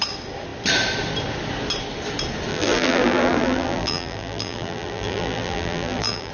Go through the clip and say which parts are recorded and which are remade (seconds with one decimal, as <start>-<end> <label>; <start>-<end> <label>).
0.0-2.5 recorded; 2.5-6.3 remade